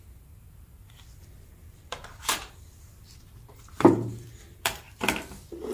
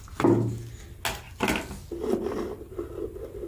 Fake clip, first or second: first